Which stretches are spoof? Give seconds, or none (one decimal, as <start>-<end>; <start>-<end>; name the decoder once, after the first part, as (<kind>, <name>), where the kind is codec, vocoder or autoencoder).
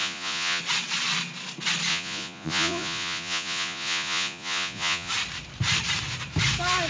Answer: 0.0-0.6 (vocoder, Vocos); 1.9-5.1